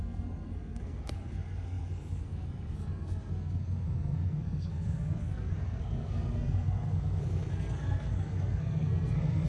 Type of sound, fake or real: fake